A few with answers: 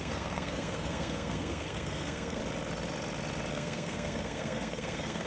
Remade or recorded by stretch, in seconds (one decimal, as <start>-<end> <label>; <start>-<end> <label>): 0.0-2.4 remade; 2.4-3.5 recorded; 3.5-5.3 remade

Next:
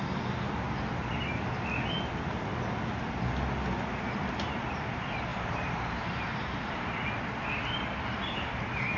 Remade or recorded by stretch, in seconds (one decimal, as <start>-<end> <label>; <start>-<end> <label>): 0.0-5.3 recorded; 5.3-7.1 remade; 7.1-9.0 recorded

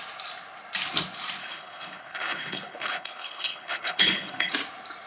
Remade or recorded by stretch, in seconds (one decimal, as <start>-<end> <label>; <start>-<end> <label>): 0.0-1.4 recorded; 1.4-4.5 remade; 4.5-5.1 recorded